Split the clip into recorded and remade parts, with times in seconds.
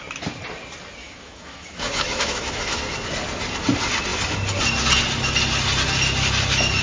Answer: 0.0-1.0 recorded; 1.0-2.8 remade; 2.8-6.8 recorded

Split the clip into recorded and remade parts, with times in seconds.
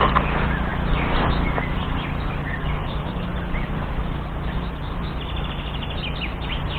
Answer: 0.0-0.7 recorded; 0.7-1.3 remade; 1.3-2.8 recorded; 2.8-5.5 remade; 5.5-6.8 recorded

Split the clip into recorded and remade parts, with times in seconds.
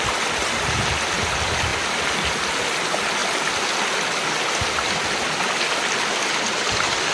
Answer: 0.0-1.7 recorded; 1.7-2.2 remade; 2.2-7.1 recorded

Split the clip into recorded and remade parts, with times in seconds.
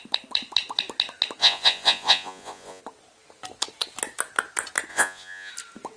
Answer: 0.0-1.4 recorded; 1.4-2.8 remade; 2.8-4.9 recorded; 4.9-5.5 remade; 5.5-6.0 recorded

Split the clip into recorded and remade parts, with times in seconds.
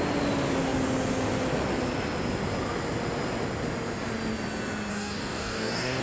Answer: 0.0-4.9 recorded; 4.9-6.0 remade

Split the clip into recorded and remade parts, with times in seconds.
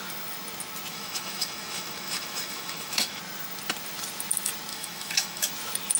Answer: 0.0-0.9 recorded; 0.9-3.2 remade; 3.2-4.7 recorded; 4.7-5.5 remade; 5.5-6.0 recorded